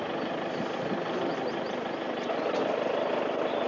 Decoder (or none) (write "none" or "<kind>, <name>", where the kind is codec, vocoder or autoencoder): none